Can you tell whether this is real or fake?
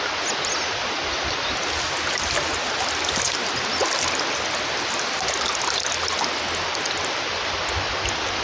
real